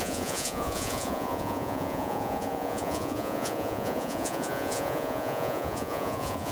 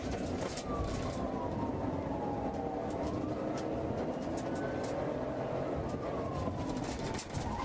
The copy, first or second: first